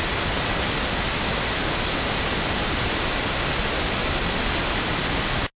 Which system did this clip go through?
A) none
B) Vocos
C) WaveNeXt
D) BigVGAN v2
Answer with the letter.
A